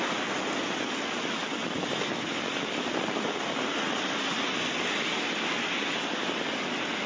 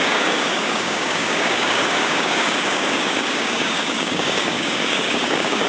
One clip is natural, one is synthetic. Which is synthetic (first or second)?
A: second